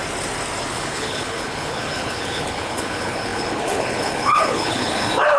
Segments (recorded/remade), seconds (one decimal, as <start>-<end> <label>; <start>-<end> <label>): 0.0-0.7 recorded; 0.7-5.4 remade